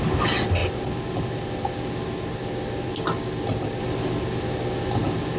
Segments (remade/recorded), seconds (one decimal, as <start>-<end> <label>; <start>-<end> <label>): 0.0-5.4 recorded